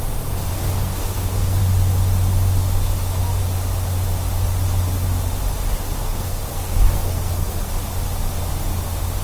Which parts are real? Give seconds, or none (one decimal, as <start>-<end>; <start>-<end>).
0.0-0.5; 1.6-6.0; 7.7-9.2